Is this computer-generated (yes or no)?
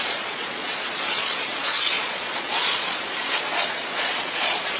yes